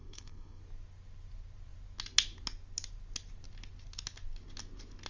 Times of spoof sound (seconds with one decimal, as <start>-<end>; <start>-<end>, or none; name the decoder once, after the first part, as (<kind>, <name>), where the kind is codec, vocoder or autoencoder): 0.0-0.6 (codec, SNAC)